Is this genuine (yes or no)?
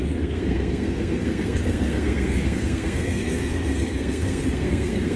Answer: no